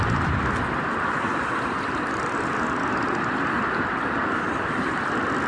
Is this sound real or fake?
real